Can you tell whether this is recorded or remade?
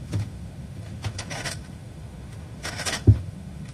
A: remade